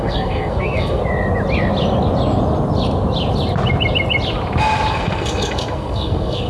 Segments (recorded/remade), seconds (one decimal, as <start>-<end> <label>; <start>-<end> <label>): 0.0-1.0 remade; 1.0-4.9 recorded; 4.9-6.5 remade